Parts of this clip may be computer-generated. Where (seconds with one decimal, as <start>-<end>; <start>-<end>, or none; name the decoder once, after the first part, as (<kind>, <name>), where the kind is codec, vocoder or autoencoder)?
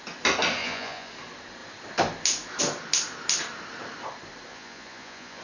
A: 0.6-1.1 (vocoder, Vocos); 4.5-5.4